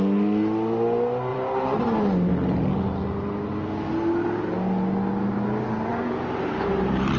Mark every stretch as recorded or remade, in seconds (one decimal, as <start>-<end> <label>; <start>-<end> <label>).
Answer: 0.0-1.3 recorded; 1.3-1.8 remade; 1.8-5.9 recorded; 5.9-7.2 remade